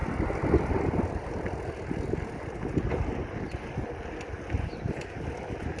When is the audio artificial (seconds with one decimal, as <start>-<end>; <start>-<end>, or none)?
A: none